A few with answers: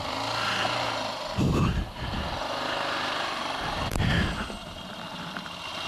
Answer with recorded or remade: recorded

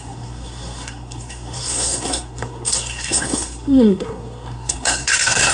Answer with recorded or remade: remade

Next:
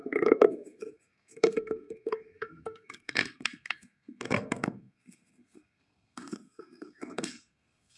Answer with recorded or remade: remade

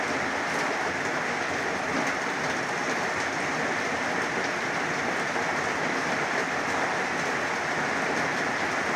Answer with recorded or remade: recorded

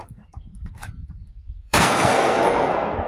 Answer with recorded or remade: remade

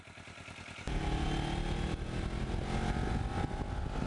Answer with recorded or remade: recorded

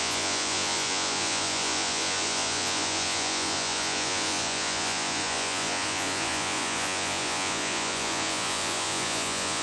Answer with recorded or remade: remade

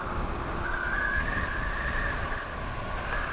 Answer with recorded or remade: recorded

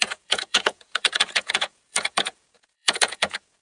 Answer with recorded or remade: remade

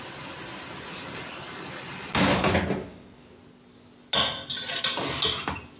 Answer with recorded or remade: recorded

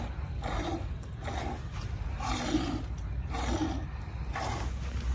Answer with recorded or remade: recorded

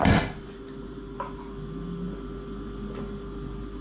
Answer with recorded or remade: recorded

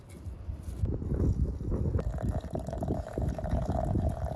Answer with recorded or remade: recorded